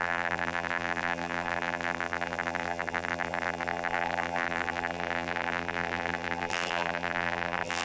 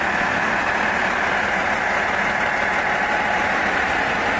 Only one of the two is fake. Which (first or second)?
first